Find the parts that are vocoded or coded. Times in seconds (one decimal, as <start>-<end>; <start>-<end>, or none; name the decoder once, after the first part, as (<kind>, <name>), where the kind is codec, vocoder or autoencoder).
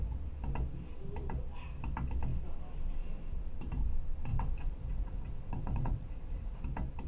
4.3-6.6 (vocoder, WaveNeXt)